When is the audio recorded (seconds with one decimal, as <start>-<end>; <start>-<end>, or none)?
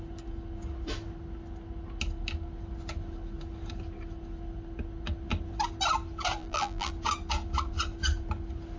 0.0-6.4; 6.9-8.8